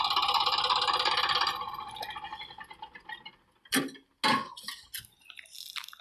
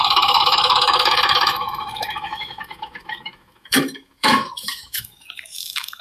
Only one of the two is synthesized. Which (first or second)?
second